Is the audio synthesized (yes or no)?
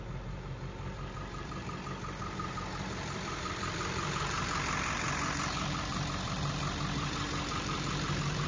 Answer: yes